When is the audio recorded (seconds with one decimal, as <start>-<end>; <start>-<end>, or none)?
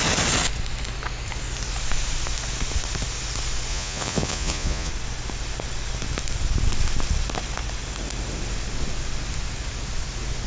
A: 0.0-3.7; 4.9-10.5